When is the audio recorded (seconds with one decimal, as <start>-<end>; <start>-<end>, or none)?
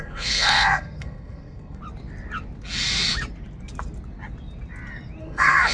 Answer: 1.8-5.2